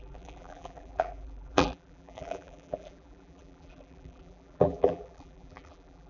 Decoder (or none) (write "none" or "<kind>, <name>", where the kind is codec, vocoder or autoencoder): vocoder, BigVGAN v2